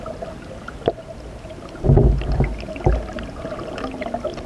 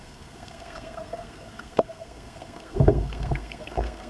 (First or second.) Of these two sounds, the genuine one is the first